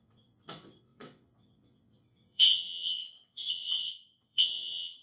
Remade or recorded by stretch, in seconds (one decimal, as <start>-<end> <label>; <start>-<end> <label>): 0.0-5.0 remade

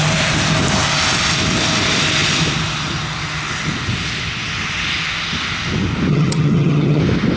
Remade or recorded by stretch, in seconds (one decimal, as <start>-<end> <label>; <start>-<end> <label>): 0.0-6.1 recorded; 6.1-7.0 remade; 7.0-7.4 recorded

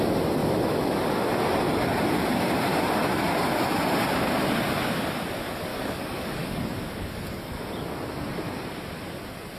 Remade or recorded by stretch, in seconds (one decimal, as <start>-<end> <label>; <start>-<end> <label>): 0.0-5.7 recorded; 5.7-7.7 remade; 7.7-9.6 recorded